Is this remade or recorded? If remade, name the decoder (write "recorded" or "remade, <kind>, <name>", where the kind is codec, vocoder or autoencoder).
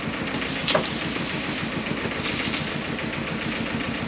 recorded